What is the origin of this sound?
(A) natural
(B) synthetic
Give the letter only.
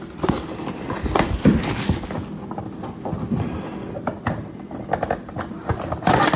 A